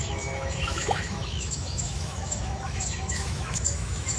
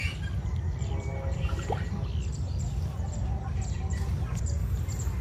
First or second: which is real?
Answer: second